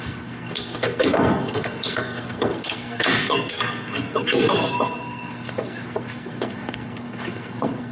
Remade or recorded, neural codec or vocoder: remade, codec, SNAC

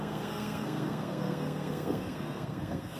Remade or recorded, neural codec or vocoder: remade, codec, SNAC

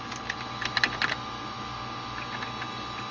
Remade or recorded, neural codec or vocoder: recorded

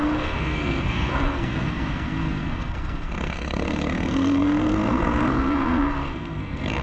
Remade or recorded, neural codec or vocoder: remade, codec, SNAC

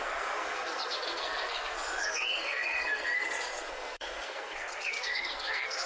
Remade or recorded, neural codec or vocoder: remade, codec, SNAC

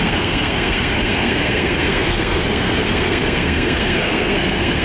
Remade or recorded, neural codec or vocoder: remade, codec, SNAC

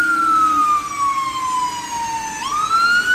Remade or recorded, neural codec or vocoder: recorded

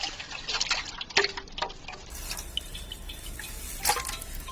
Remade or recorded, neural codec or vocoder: recorded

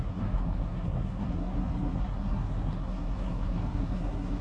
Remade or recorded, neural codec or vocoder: remade, codec, SNAC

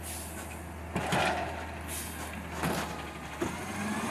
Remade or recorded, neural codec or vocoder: recorded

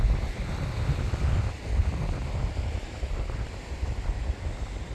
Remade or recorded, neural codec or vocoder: recorded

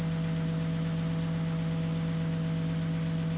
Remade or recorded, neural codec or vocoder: recorded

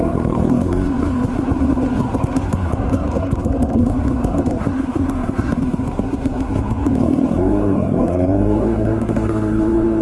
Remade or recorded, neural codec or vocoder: remade, codec, SNAC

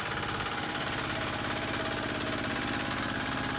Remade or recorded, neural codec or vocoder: recorded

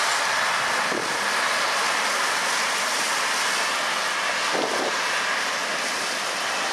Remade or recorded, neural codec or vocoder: recorded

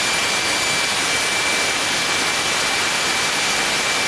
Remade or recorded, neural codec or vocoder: recorded